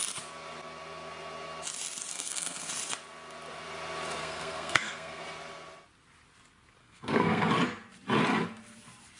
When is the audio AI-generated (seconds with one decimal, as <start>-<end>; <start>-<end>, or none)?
2.1-2.7; 4.2-5.2; 6.8-7.5